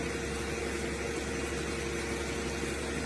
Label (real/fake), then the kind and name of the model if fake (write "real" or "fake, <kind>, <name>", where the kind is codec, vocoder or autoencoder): real